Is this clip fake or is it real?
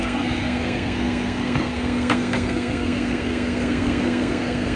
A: fake